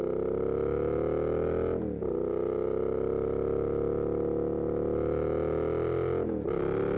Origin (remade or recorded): recorded